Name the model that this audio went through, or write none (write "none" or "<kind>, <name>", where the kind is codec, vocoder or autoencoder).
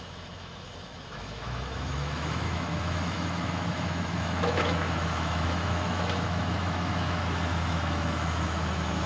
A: autoencoder, DAC-VAE